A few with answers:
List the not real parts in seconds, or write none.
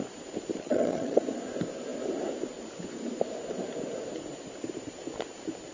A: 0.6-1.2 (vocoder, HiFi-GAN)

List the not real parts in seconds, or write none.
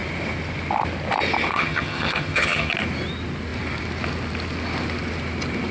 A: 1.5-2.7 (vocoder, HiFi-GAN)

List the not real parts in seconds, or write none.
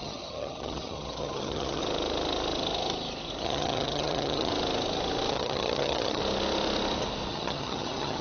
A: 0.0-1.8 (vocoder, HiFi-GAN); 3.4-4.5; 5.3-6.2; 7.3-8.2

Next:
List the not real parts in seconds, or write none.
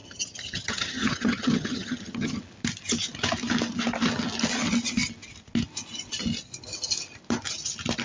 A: 0.0-2.4 (vocoder, HiFi-GAN)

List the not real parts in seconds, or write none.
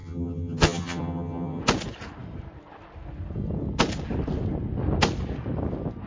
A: 0.0-1.6 (vocoder, HiFi-GAN)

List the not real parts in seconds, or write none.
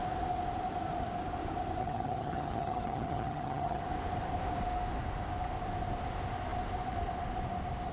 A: 1.8-3.8 (vocoder, HiFi-GAN)